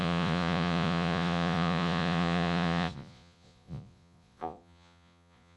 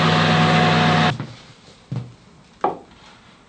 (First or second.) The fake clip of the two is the first